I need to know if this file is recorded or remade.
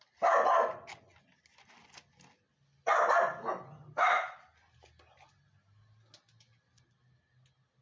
recorded